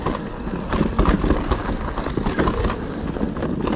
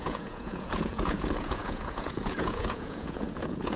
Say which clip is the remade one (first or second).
second